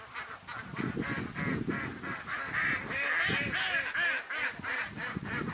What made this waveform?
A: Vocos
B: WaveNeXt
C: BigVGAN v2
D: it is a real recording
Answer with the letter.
D